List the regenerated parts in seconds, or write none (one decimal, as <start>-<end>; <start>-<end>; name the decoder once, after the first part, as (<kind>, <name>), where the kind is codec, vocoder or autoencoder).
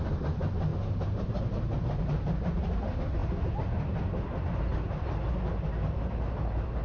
none